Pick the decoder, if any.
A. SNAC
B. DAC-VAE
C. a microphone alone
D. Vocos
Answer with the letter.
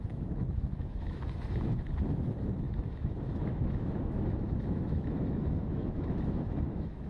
B